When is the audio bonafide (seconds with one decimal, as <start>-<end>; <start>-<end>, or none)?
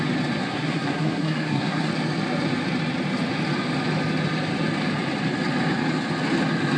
0.0-0.4; 1.9-6.8